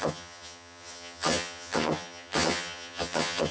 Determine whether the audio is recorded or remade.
remade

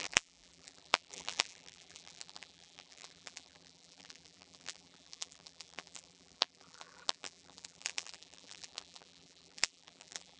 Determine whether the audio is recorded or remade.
remade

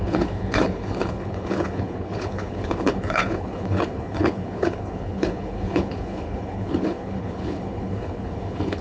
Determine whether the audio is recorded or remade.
remade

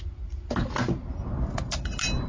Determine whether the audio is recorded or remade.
recorded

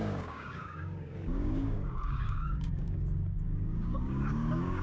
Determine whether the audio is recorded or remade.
remade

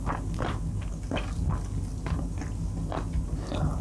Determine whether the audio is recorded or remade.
recorded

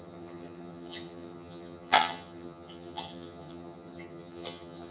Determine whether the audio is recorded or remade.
remade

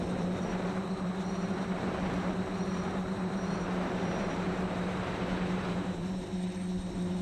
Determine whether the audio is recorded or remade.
remade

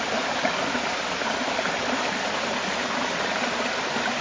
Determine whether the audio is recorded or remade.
recorded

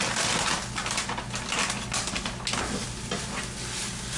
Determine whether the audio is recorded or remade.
recorded